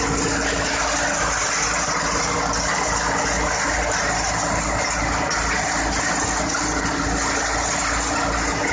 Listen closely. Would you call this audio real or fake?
real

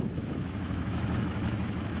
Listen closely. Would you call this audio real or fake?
fake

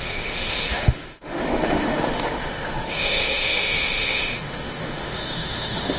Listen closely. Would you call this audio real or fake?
fake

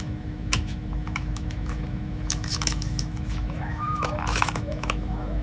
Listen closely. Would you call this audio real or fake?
fake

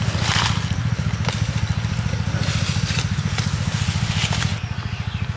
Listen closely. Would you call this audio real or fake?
real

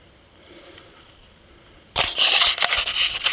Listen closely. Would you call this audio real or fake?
real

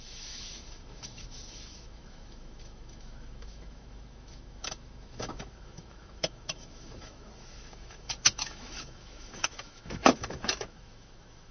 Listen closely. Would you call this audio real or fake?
fake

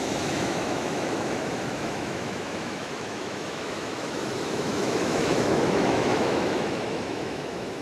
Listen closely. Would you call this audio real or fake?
fake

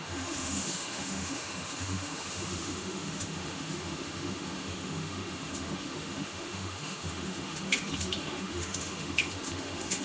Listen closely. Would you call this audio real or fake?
fake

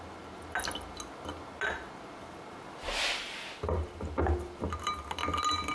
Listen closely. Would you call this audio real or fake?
real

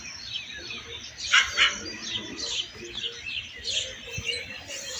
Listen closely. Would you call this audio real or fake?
real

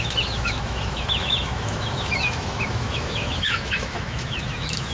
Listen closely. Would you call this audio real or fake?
fake